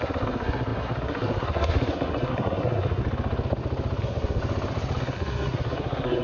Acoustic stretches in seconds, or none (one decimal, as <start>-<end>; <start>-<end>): 3.0-4.0; 4.4-5.0

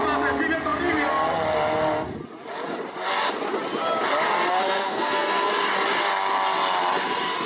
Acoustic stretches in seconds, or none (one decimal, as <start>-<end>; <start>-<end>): 0.0-4.5; 5.5-7.5

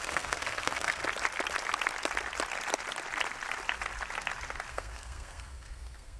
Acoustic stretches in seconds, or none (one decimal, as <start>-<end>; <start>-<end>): 1.0-4.7

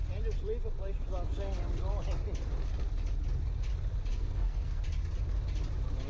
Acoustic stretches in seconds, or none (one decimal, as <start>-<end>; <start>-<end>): 0.0-4.1; 4.8-6.1

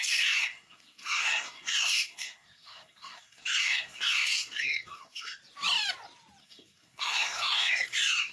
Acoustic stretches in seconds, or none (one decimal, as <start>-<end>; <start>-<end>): 5.4-6.4